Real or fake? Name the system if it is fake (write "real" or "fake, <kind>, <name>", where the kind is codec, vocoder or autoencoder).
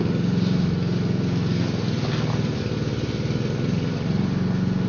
real